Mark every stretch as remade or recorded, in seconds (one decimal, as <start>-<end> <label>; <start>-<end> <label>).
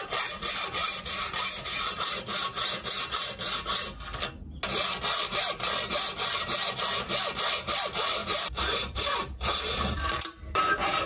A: 0.0-0.8 recorded; 0.8-1.6 remade; 1.6-8.2 recorded; 8.2-10.6 remade; 10.6-11.1 recorded